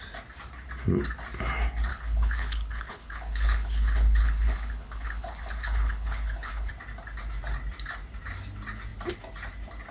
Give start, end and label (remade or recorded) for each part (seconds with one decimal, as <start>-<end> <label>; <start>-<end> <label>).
0.0-1.9 recorded; 1.9-6.7 remade; 6.7-9.9 recorded